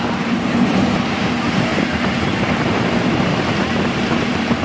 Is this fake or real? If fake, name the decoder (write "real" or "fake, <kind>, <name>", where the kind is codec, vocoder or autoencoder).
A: fake, vocoder, BigVGAN v2